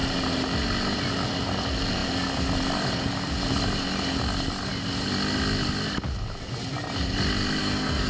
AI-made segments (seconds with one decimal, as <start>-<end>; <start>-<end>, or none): 7.6-8.1